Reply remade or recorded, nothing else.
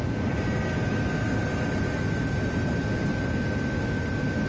recorded